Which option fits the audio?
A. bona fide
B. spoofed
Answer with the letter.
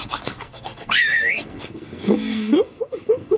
B